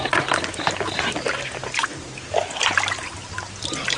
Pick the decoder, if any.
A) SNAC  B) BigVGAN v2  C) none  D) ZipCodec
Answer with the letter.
C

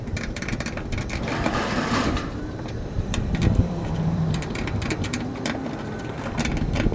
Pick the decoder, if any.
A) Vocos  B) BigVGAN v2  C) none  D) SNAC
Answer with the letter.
B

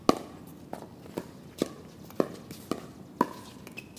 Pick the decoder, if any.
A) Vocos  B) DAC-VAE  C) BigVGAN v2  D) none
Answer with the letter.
D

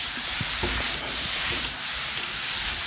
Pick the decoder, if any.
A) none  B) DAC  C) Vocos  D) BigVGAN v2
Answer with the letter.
D